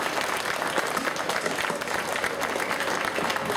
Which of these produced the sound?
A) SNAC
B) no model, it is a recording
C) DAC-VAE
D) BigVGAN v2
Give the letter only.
B